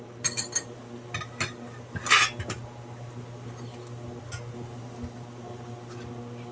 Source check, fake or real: real